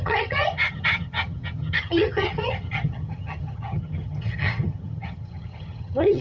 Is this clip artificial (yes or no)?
yes